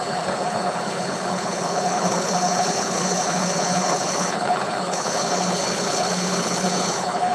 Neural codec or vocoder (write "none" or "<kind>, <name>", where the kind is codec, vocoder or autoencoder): codec, HILCodec